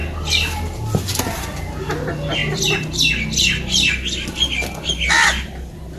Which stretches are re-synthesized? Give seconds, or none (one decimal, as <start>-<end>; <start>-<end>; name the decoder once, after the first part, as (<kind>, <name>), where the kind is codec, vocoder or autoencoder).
none